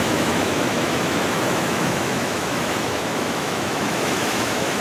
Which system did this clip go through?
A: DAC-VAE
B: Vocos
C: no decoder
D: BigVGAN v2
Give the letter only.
A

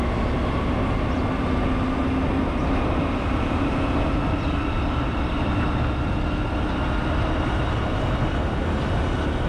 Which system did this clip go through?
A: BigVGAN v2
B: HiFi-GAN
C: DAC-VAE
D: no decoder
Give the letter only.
D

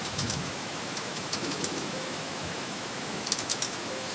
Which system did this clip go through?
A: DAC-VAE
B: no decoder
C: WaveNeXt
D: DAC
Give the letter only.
A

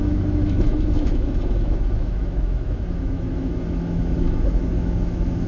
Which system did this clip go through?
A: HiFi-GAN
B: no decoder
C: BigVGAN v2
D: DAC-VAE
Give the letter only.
D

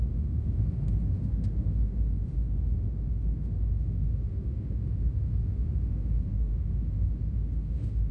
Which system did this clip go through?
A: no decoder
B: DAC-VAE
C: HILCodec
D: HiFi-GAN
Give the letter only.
B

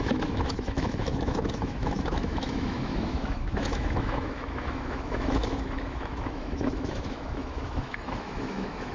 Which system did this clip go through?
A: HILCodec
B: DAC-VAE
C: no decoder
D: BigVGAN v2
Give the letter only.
B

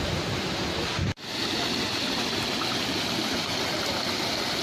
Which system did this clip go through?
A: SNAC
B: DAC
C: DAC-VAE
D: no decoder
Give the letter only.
D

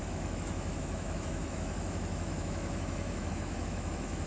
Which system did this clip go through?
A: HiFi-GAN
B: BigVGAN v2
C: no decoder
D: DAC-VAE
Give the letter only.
D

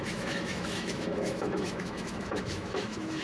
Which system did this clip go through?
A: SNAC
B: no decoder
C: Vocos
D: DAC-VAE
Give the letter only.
D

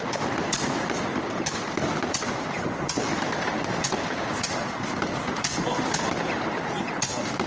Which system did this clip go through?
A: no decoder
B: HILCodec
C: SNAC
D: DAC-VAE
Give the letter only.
A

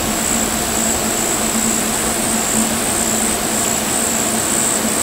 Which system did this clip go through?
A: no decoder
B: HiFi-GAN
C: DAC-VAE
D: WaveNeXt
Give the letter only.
A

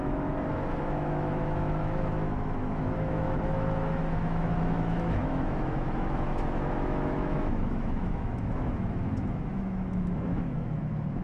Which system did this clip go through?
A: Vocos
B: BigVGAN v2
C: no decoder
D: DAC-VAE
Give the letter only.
D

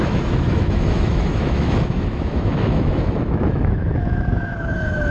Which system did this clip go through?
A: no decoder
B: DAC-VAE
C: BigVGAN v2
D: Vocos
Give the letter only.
B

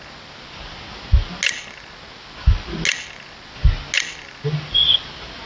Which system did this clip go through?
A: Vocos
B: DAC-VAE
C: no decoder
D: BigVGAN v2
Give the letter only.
C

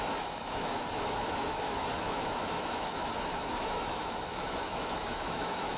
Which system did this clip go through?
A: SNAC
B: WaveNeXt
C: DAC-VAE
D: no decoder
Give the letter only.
C